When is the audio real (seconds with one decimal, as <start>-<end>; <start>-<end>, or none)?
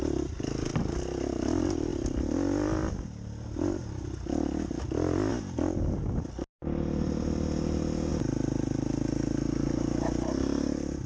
0.0-11.1